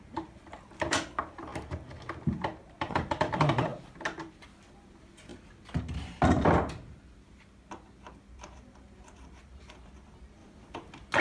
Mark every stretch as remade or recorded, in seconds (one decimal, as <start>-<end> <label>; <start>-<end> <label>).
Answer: 0.0-1.5 remade; 1.5-2.8 recorded; 2.8-3.7 remade; 3.7-4.7 recorded; 4.7-5.3 remade; 5.3-8.1 recorded; 8.1-10.4 remade; 10.4-11.2 recorded